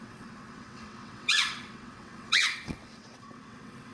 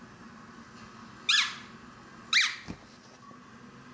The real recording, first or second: second